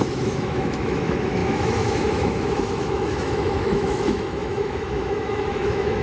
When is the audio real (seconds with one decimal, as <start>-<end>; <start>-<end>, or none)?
none

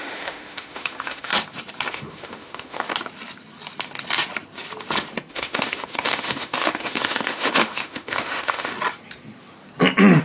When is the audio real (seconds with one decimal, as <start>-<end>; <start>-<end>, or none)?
1.3-1.9; 2.9-5.3; 8.7-10.2

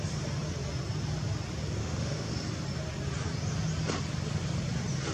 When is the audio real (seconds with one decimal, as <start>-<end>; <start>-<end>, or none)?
0.0-1.8; 2.3-5.1

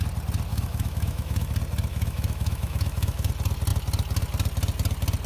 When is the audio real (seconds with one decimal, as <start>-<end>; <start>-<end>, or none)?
0.0-0.5; 1.5-1.9; 3.3-5.3

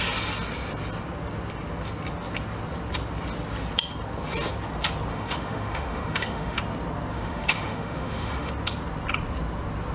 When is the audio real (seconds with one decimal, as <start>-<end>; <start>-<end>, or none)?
0.0-5.1; 6.6-7.1; 8.5-9.9

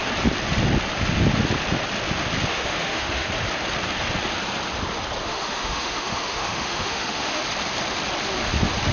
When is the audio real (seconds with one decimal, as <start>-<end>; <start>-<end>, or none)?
0.0-2.5; 3.3-5.2; 7.4-8.9

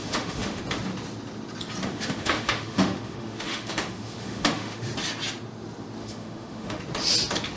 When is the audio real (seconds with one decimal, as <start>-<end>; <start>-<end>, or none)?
0.6-1.9; 4.9-6.0; 6.8-7.6

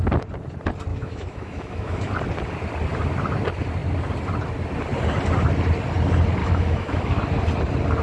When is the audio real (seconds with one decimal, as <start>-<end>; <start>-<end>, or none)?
0.0-0.9; 2.1-6.4; 7.2-8.0